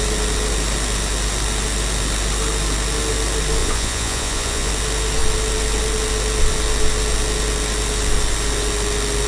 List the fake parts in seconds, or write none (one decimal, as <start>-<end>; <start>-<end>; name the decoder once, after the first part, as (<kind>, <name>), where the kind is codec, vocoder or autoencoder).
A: 3.6-4.7 (vocoder, Vocos)